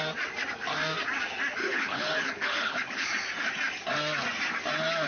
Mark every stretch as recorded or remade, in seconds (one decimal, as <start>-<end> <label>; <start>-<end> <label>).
0.0-1.6 recorded; 1.6-3.1 remade; 3.1-5.1 recorded